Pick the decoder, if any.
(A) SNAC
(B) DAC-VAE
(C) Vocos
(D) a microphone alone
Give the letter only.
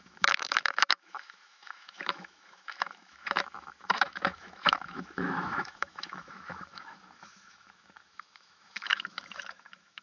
B